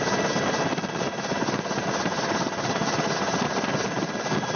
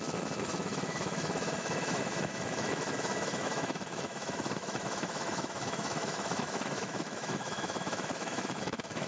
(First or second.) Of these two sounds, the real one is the first